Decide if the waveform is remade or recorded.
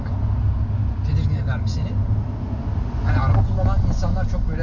recorded